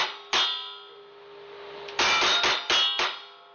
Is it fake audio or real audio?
real